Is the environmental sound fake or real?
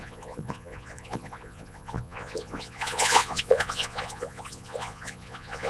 fake